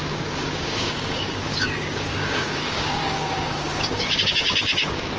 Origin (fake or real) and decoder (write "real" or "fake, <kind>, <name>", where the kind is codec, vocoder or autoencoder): fake, codec, DAC